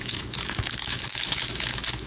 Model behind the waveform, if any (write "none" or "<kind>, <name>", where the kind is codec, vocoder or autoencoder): autoencoder, DAC-VAE